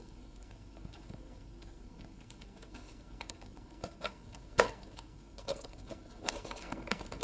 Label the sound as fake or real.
fake